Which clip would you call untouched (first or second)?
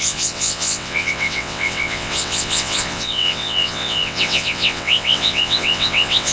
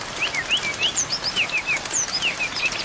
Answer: second